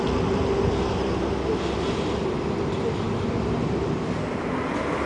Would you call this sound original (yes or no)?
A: yes